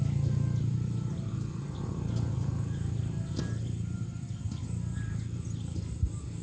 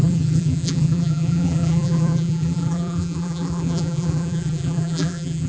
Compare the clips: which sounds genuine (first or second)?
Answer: first